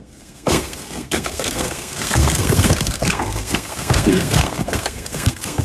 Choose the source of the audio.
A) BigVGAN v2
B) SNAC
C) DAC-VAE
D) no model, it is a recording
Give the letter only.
B